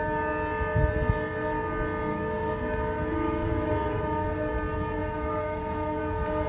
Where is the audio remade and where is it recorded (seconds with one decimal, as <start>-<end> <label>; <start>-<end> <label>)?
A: 0.0-2.1 recorded; 2.1-4.5 remade; 4.5-5.0 recorded; 5.0-6.0 remade; 6.0-6.5 recorded

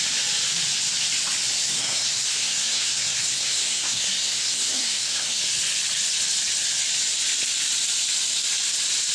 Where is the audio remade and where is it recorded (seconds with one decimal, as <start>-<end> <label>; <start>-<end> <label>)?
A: 0.0-1.6 recorded; 1.6-5.4 remade; 5.4-9.1 recorded

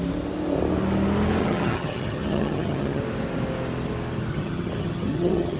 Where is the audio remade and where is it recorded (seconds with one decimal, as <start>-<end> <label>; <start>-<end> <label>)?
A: 0.0-1.4 recorded; 1.4-3.0 remade; 3.0-4.3 recorded; 4.3-5.6 remade

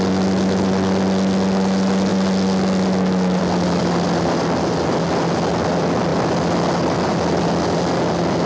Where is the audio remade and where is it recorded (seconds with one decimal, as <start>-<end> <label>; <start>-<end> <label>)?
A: 0.0-8.5 recorded

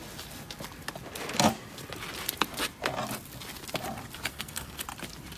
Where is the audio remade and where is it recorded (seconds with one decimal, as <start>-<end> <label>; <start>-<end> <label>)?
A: 0.0-4.3 recorded; 4.3-4.8 remade; 4.8-5.4 recorded

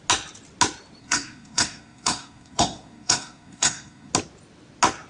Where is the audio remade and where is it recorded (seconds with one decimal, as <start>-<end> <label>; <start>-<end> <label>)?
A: 0.0-1.0 recorded; 1.0-4.1 remade; 4.1-5.1 recorded

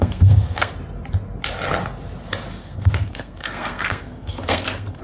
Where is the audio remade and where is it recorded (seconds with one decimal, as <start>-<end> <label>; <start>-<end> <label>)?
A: 0.0-0.7 remade; 0.7-2.6 recorded; 2.6-5.0 remade

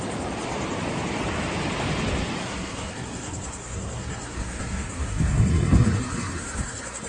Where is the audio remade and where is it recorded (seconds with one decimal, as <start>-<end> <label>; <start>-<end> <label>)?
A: 0.0-2.4 recorded; 2.4-7.1 remade